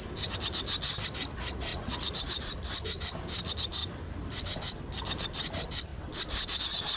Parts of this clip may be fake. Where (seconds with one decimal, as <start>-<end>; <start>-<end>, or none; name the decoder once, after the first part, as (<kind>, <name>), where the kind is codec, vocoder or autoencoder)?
1.7-2.5 (vocoder, Vocos)